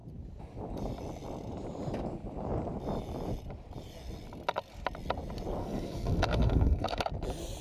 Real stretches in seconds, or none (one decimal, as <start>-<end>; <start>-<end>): 0.0-5.6; 7.0-7.6